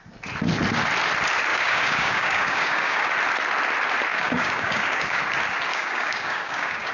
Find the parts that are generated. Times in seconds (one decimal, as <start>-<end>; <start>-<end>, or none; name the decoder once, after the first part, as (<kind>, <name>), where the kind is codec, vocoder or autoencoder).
1.5-3.1 (codec, DAC); 4.1-5.2; 5.7-6.9